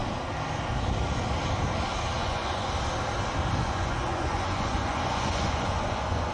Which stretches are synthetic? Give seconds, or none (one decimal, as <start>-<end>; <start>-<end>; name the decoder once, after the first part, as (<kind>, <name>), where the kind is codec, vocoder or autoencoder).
2.2-2.7 (vocoder, Vocos); 3.6-6.3